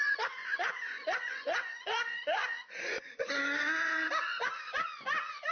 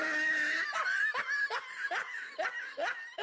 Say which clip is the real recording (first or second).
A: second